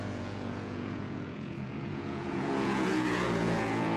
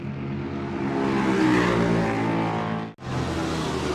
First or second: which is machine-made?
first